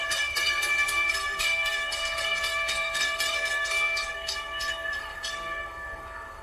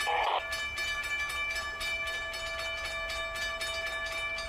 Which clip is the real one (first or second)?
second